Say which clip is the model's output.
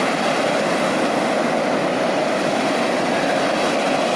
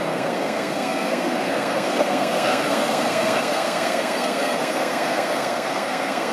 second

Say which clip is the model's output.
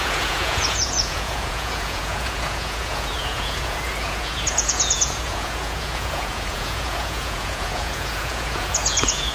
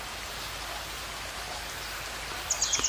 first